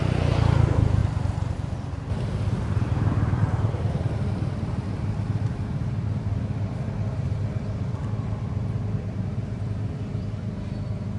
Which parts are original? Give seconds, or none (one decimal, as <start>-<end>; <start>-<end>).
none